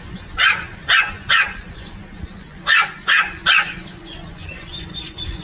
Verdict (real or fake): fake